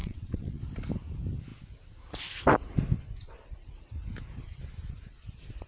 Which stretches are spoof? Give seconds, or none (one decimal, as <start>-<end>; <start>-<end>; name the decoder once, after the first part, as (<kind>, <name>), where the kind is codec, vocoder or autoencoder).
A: 0.0-0.6 (vocoder, WaveNeXt)